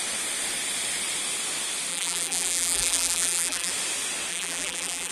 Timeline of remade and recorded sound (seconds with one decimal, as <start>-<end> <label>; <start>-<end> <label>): 0.0-1.9 recorded; 1.9-3.7 remade; 3.7-4.3 recorded; 4.3-5.1 remade